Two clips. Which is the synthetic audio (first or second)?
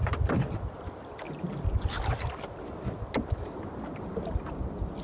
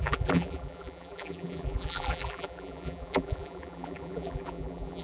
second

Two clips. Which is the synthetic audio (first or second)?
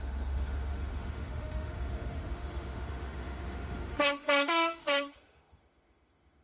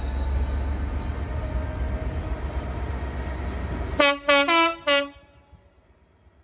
first